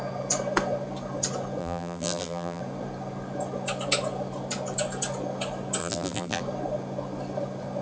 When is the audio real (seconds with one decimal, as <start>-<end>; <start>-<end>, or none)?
0.0-1.6; 2.6-5.8; 6.4-7.8